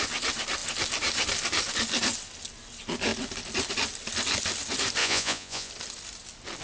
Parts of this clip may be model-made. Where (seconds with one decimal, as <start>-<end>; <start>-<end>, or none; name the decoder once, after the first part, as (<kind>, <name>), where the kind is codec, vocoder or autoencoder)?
5.0-5.7 (vocoder, Vocos)